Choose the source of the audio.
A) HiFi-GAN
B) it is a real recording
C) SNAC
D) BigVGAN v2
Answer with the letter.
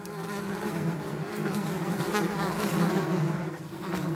C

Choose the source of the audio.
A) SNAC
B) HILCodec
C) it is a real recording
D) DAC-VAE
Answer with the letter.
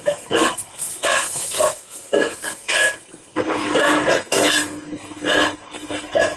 A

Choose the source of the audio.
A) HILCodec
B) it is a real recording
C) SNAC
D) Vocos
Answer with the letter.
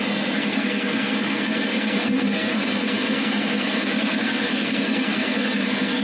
C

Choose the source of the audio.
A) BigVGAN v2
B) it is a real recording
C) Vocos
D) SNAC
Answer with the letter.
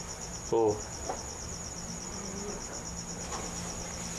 B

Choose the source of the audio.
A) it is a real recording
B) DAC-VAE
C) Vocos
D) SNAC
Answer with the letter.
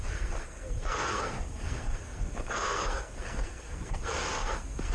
D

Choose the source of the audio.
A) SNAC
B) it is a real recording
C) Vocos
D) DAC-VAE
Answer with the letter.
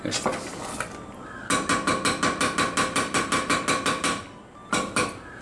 B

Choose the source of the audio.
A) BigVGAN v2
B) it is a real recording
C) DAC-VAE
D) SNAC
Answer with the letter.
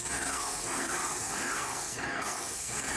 D